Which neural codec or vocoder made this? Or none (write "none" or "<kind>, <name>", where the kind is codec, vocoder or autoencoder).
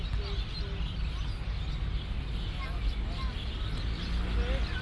none